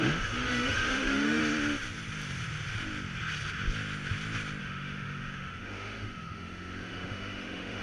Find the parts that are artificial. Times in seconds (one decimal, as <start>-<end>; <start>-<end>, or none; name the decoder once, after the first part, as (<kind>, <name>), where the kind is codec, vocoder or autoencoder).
0.0-1.4 (autoencoder, DAC-VAE); 4.6-7.8